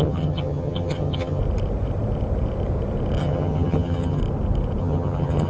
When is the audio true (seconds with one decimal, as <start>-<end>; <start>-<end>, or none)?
1.4-3.2; 4.2-4.8